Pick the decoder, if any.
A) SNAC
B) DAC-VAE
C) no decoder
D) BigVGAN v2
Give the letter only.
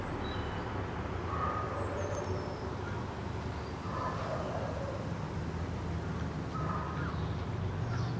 C